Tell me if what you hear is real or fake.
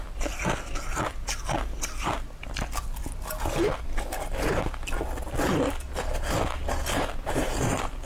real